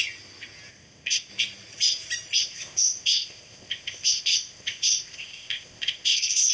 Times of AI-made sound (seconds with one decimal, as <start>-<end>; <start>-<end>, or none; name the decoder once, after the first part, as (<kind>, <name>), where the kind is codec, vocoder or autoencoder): 0.7-1.3 (codec, ZipCodec); 2.4-6.5